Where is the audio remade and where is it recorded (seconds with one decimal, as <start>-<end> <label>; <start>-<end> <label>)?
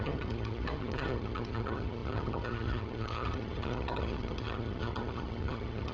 0.0-5.9 remade